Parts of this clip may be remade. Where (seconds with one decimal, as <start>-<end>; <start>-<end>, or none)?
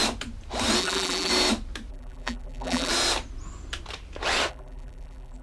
0.8-1.3; 1.9-2.9; 4.5-5.4